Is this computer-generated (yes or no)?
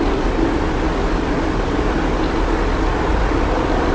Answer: no